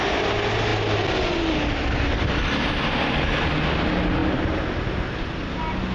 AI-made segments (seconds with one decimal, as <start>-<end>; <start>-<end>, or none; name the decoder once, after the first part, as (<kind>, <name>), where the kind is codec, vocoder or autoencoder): none